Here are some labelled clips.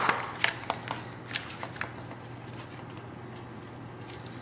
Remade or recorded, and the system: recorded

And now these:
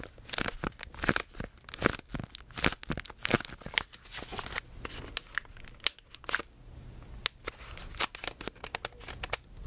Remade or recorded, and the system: recorded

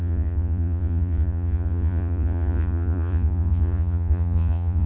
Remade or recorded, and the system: remade, vocoder, Vocos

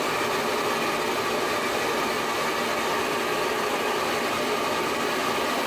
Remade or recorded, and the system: recorded